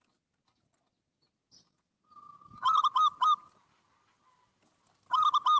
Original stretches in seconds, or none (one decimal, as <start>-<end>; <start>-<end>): 0.0-1.4; 2.8-5.6

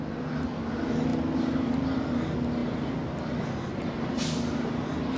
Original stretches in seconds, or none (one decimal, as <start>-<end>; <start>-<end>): 0.0-5.2